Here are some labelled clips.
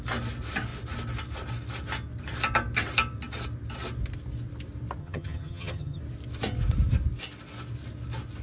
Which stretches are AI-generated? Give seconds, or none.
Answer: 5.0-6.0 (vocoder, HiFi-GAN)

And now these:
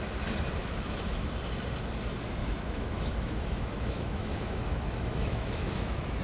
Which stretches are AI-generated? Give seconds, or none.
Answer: 0.6-1.3 (autoencoder, DAC-VAE); 2.4-6.2

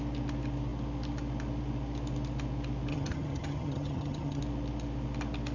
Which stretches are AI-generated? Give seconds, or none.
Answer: 2.9-4.4 (vocoder, HiFi-GAN)

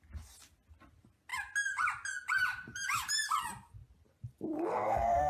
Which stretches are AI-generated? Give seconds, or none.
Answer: 4.7-5.3 (codec, SNAC)

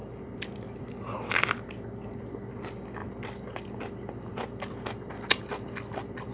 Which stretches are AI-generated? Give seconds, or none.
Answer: 0.0-1.7 (vocoder, BigVGAN v2); 4.3-5.4